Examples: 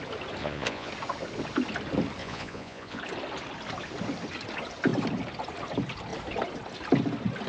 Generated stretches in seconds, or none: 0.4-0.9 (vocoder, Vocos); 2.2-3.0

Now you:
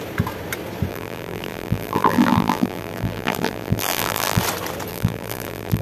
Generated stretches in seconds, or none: 0.9-4.4 (vocoder, BigVGAN v2); 4.9-5.8

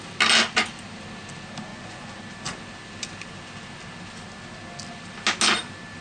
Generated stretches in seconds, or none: 1.7-2.2 (vocoder, Vocos)

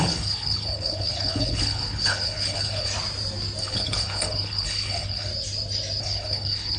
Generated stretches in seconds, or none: 0.0-2.9 (codec, HILCodec); 3.6-5.3; 6.0-6.8

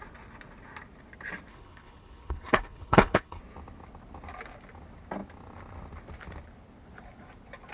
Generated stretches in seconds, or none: 1.5-3.4 (codec, HILCodec)